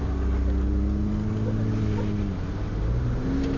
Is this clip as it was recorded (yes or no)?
yes